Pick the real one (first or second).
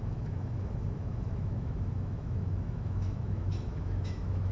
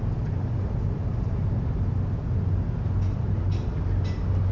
second